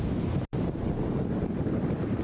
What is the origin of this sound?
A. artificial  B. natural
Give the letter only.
B